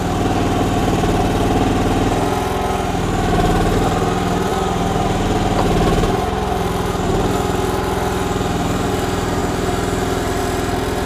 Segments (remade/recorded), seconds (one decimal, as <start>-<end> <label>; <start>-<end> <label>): 0.0-0.8 recorded; 0.8-1.7 remade; 1.7-4.5 recorded; 4.5-8.9 remade; 8.9-9.4 recorded; 9.4-10.4 remade; 10.4-11.1 recorded